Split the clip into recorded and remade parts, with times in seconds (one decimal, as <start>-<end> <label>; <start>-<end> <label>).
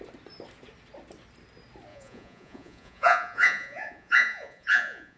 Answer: 0.0-1.9 recorded; 1.9-5.2 remade